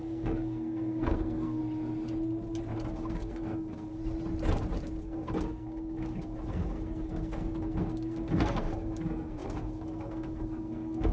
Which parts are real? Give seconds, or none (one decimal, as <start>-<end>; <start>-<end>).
1.6-2.9; 4.0-5.0